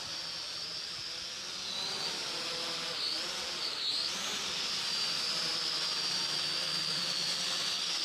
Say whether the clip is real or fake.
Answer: real